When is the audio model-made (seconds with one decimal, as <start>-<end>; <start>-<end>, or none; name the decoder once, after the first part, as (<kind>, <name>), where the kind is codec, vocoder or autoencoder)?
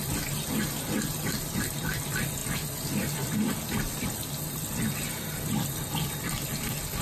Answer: none